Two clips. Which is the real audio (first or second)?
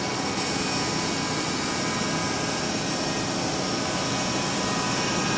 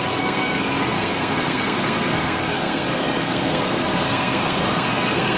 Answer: first